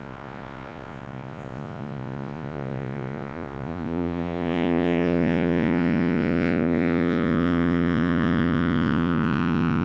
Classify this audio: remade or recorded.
remade